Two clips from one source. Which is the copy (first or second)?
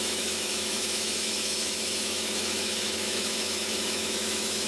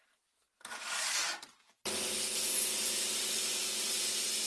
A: first